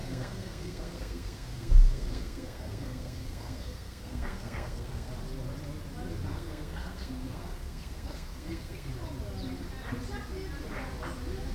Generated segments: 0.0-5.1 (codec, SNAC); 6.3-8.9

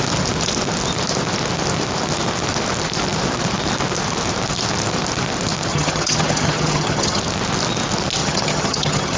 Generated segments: 5.7-7.2 (vocoder, HiFi-GAN); 8.2-9.2